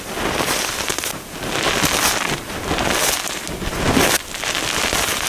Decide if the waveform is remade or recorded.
recorded